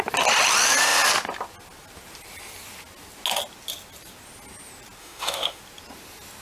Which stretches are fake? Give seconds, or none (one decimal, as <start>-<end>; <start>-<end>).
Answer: 5.0-5.6